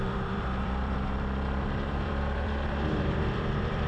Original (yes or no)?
no